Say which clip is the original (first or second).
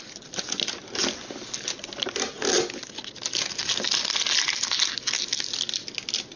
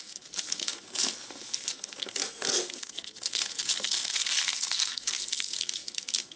first